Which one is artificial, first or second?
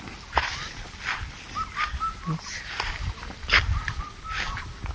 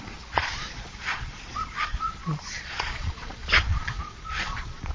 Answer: second